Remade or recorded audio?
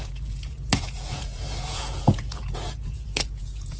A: remade